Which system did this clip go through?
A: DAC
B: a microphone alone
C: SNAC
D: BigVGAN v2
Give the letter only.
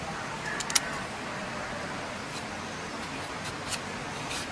B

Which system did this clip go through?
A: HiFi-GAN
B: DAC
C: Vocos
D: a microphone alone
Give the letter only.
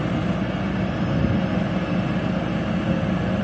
D